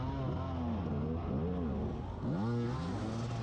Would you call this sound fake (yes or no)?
no